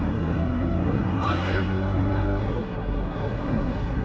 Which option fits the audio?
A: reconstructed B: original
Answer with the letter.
A